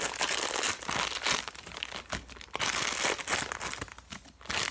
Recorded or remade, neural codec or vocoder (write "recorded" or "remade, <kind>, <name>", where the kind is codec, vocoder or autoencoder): recorded